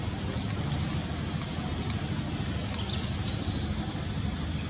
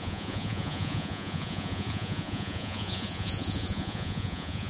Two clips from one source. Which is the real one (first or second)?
first